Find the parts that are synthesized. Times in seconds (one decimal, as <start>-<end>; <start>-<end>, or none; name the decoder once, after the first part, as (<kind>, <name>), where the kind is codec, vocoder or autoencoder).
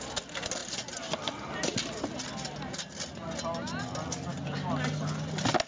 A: none